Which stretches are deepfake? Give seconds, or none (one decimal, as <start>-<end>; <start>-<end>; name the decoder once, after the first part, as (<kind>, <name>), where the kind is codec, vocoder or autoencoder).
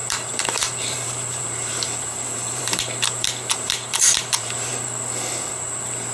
0.0-4.7 (vocoder, BigVGAN v2); 5.5-6.1